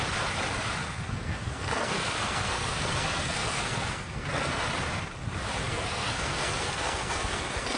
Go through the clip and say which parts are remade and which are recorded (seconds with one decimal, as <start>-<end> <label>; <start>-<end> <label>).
0.0-0.8 recorded; 0.8-4.6 remade; 4.6-5.6 recorded; 5.6-7.8 remade